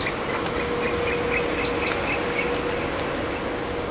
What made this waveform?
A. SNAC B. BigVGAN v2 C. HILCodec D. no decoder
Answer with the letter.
D